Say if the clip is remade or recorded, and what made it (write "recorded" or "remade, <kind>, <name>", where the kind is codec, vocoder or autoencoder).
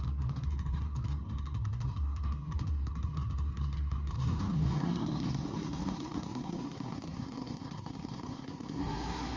remade, codec, SNAC